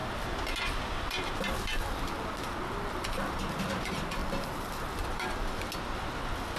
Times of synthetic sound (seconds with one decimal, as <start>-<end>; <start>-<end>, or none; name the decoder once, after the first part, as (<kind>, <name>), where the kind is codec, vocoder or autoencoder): 4.2-5.6 (vocoder, BigVGAN v2)